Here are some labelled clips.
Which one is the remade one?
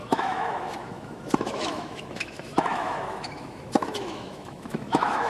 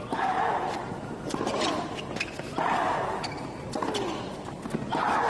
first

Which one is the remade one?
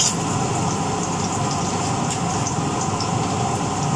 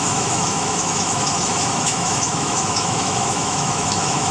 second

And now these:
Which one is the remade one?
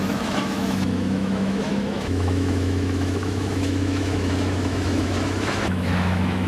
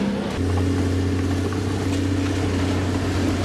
first